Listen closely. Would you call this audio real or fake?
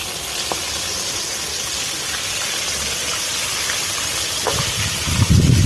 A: real